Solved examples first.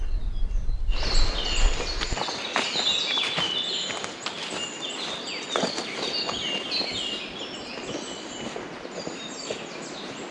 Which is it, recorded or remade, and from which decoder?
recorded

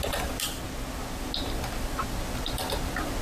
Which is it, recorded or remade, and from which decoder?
recorded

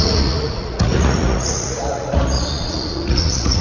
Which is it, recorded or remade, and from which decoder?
remade, vocoder, Vocos